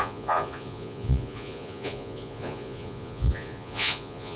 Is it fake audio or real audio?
fake